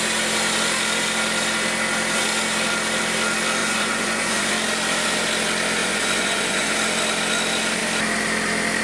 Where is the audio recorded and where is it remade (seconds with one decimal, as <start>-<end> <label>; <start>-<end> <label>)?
0.0-3.6 recorded; 3.6-4.5 remade; 4.5-5.8 recorded; 5.8-6.7 remade; 6.7-8.8 recorded